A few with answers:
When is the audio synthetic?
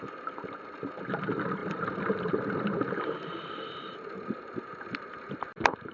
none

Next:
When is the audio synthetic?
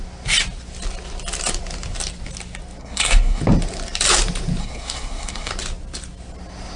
2.8-3.4 (codec, SNAC); 4.6-5.5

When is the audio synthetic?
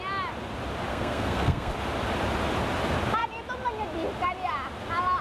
0.9-1.7 (codec, SNAC)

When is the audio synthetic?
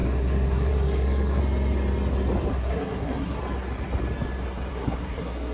0.0-1.4 (codec, SNAC); 2.5-3.4; 4.7-5.5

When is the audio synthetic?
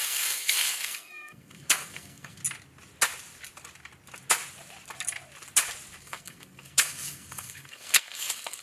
0.0-2.4 (codec, SNAC); 6.0-8.6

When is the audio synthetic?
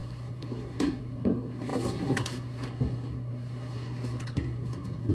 0.0-5.1 (codec, SNAC)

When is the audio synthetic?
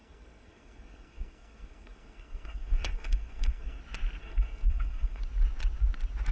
0.0-3.8 (codec, SNAC); 4.2-5.2